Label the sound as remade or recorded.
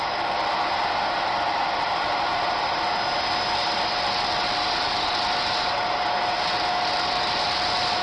recorded